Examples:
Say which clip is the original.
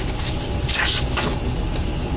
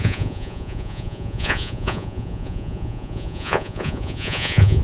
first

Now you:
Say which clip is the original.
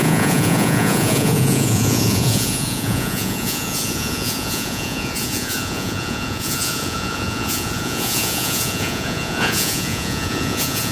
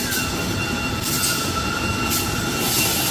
second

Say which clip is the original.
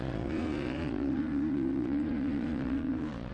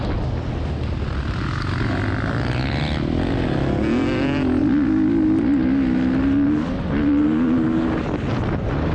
second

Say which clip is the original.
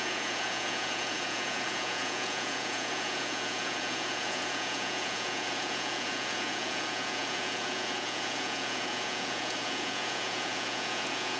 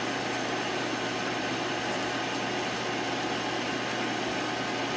second